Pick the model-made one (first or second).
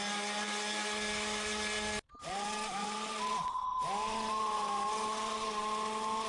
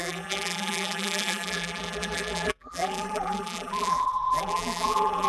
second